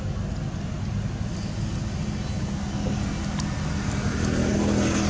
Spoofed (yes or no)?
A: no